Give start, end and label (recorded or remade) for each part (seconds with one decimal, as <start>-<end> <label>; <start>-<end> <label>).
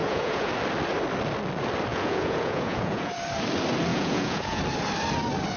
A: 0.0-0.5 remade; 0.5-1.9 recorded; 1.9-3.1 remade; 3.1-3.9 recorded; 3.9-4.6 remade; 4.6-5.6 recorded